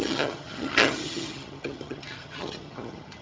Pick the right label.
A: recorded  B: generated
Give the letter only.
B